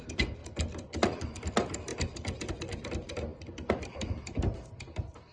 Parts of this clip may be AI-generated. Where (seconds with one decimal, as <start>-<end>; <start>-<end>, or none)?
none